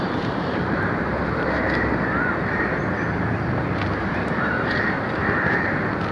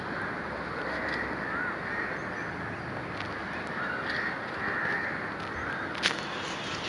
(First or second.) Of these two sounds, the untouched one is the second